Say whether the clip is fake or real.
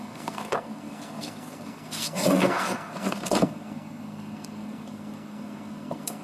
fake